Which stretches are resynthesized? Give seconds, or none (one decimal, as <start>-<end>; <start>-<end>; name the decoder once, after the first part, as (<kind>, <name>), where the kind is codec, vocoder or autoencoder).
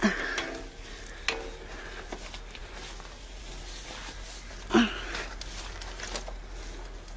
none